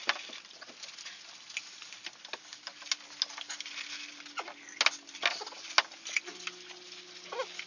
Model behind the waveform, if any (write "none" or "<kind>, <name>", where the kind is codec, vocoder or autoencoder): none